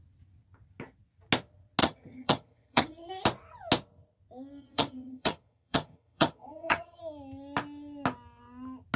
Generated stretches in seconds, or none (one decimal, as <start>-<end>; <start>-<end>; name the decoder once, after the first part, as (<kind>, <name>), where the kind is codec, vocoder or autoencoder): 1.8-3.1 (vocoder, HiFi-GAN); 4.6-7.0